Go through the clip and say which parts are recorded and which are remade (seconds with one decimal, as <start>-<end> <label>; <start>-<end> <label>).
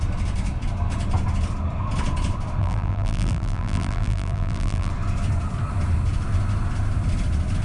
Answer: 0.0-2.6 recorded; 2.6-4.9 remade; 4.9-7.6 recorded